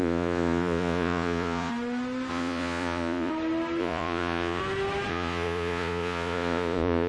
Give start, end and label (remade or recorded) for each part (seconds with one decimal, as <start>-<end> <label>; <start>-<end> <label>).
0.0-1.7 remade; 1.7-2.3 recorded; 2.3-3.3 remade; 3.3-3.8 recorded; 3.8-4.6 remade; 4.6-5.1 recorded; 5.1-7.1 remade